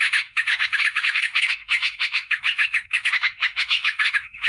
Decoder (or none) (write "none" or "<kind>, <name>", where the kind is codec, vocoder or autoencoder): autoencoder, DAC-VAE